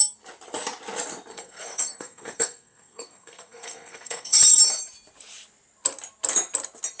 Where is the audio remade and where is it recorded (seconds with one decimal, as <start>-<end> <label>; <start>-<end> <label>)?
0.0-1.3 recorded; 1.3-4.4 remade; 4.4-7.0 recorded